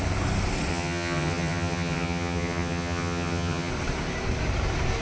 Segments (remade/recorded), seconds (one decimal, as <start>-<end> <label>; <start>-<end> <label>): 0.0-0.7 recorded; 0.7-3.7 remade; 3.7-5.0 recorded